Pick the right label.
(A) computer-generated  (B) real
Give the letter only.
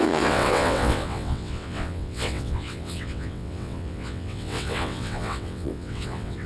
A